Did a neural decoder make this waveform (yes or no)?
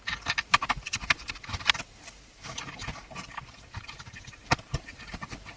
yes